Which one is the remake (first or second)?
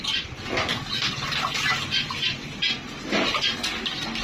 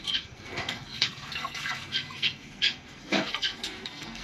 second